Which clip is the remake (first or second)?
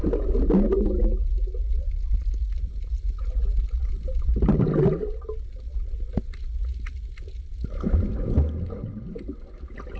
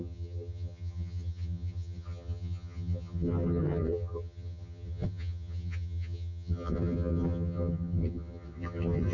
second